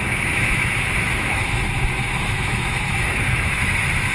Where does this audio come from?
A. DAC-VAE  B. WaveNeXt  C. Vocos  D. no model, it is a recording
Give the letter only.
A